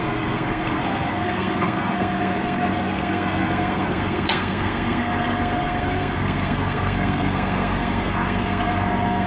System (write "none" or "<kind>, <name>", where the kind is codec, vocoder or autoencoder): codec, SNAC